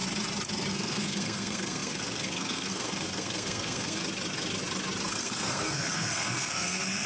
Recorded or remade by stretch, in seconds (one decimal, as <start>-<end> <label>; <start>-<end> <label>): 0.0-0.7 recorded; 0.7-4.0 remade; 4.0-5.1 recorded; 5.1-7.1 remade